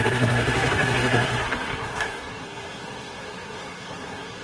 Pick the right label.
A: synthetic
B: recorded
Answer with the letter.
A